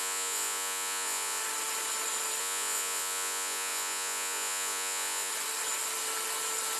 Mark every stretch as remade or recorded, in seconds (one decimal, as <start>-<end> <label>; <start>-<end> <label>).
0.0-1.4 remade; 1.4-2.4 recorded; 2.4-5.3 remade; 5.3-6.8 recorded

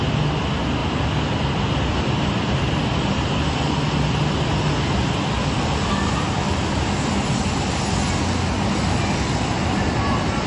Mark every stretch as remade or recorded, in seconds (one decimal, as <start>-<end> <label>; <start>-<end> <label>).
0.0-10.5 recorded

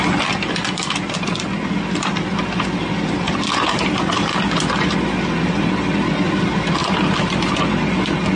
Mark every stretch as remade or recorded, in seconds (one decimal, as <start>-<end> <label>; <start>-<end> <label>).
0.0-8.4 recorded

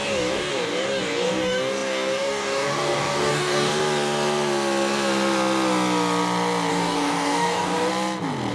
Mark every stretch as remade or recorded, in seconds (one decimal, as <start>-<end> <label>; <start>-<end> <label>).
0.0-3.7 remade; 3.7-6.7 recorded; 6.7-7.9 remade; 7.9-8.5 recorded

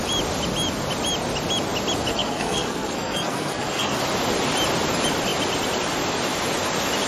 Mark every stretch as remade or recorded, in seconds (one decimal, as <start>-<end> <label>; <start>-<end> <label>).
0.0-2.1 recorded; 2.1-4.0 remade; 4.0-7.1 recorded

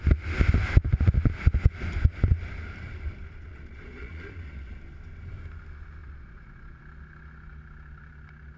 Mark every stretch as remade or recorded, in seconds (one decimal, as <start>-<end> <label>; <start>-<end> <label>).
0.0-3.5 recorded; 3.5-4.3 remade; 4.3-6.0 recorded; 6.0-6.8 remade; 6.8-8.6 recorded

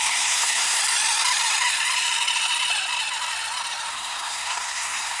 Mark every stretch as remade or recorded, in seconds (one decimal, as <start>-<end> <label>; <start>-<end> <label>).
0.0-0.8 remade; 0.8-3.9 recorded; 3.9-5.2 remade

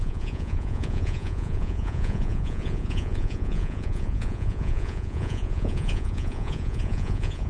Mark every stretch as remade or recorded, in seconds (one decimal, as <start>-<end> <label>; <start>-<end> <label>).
0.0-7.5 remade